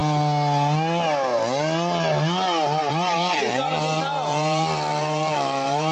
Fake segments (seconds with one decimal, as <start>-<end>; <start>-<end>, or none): 2.9-5.9